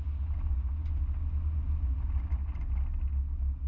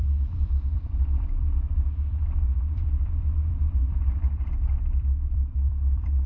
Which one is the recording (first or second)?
first